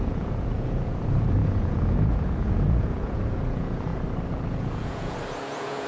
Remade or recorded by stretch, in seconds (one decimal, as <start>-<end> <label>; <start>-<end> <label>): 0.0-3.9 remade; 3.9-4.5 recorded; 4.5-5.9 remade